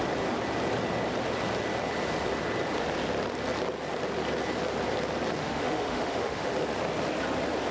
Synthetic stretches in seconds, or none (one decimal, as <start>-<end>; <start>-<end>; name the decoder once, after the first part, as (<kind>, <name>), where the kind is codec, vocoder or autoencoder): 5.4-6.5 (autoencoder, DAC-VAE)